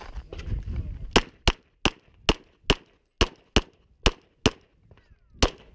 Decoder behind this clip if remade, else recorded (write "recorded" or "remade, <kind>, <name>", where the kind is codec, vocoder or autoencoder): recorded